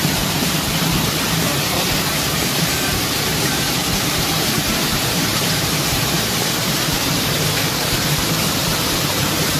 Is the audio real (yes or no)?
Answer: no